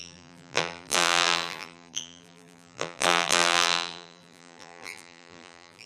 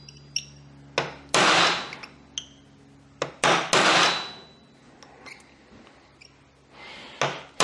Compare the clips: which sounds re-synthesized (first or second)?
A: first